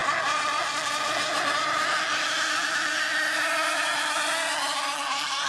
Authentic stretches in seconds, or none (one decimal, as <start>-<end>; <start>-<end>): 0.0-5.5